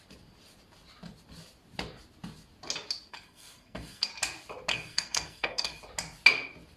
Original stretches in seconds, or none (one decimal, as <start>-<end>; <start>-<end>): 0.0-3.1; 4.1-4.7; 5.8-6.8